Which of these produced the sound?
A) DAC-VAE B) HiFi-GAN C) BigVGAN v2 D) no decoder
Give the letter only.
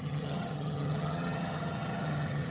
B